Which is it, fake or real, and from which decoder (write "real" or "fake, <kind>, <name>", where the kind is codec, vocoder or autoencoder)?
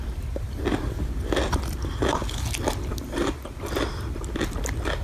real